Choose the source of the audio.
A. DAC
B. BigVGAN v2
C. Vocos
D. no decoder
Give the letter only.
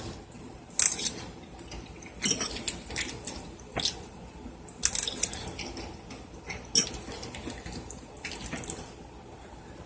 D